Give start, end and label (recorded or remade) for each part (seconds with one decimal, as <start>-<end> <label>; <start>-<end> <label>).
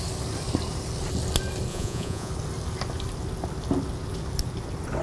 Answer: 0.0-1.7 recorded; 1.7-2.3 remade; 2.3-5.0 recorded